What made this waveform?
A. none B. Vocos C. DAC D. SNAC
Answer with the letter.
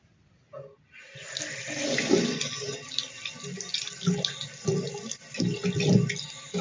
A